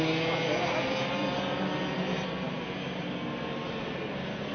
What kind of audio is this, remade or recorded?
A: recorded